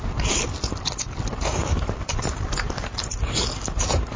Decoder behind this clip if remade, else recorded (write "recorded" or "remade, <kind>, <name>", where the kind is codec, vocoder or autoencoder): recorded